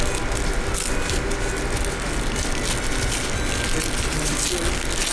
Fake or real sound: real